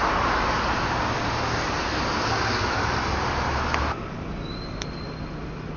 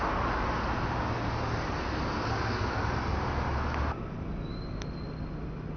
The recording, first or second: second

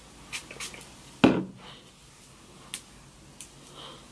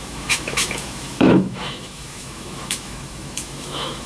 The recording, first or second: first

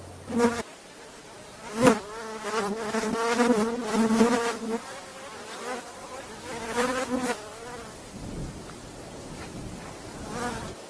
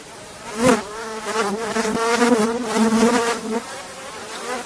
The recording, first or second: first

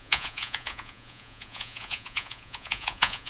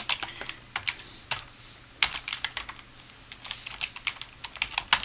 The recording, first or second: second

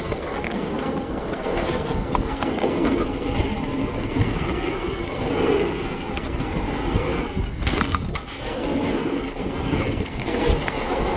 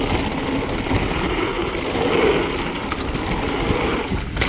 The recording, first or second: second